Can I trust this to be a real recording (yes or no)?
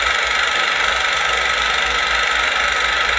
no